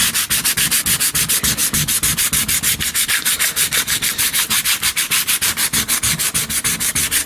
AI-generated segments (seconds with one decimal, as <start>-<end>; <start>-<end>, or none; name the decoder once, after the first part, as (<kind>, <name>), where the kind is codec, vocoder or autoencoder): 0.0-0.5 (vocoder, BigVGAN v2); 1.6-6.0